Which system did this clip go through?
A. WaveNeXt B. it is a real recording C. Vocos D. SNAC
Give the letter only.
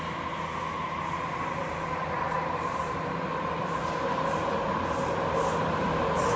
B